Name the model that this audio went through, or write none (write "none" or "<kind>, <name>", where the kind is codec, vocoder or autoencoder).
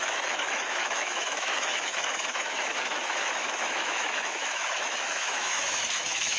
autoencoder, DAC-VAE